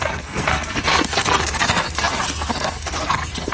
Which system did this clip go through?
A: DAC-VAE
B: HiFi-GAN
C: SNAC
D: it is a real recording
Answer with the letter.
C